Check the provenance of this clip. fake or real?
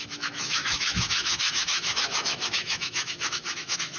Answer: fake